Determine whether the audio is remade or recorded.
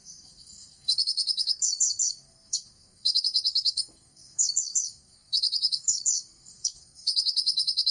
remade